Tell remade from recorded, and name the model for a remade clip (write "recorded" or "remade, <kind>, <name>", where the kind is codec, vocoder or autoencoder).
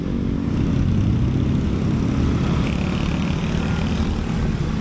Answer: recorded